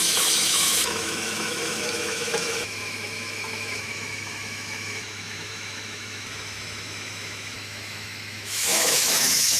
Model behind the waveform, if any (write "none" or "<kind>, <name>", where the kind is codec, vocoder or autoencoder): autoencoder, DAC-VAE